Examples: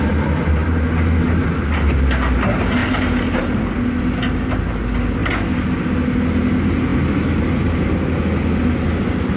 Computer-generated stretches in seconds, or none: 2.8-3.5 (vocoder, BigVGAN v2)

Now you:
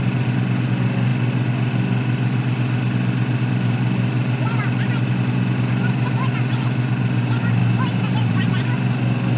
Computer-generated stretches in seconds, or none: 7.6-8.5 (vocoder, BigVGAN v2)